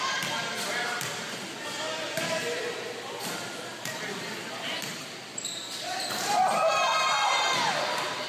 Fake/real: fake